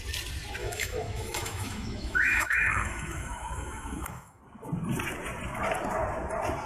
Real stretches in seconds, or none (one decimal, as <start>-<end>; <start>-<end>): 0.0-0.6; 4.4-6.7